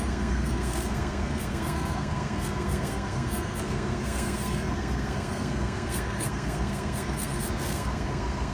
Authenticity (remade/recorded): remade